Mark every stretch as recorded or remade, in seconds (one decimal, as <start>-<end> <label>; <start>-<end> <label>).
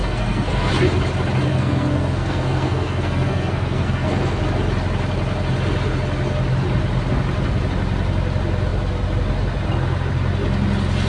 0.0-0.7 remade; 0.7-1.5 recorded; 1.5-4.4 remade; 4.4-11.1 recorded